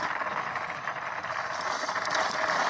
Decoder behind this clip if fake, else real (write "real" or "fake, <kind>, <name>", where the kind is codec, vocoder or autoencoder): real